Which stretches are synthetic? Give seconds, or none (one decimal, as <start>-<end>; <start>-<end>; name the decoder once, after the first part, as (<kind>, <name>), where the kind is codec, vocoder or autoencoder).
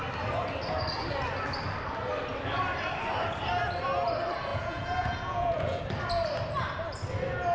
4.5-5.8 (vocoder, Vocos)